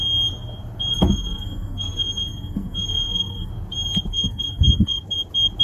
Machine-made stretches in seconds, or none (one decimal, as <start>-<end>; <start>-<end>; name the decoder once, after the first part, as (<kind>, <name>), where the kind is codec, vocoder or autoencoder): 0.9-3.5 (codec, SNAC); 4.1-5.0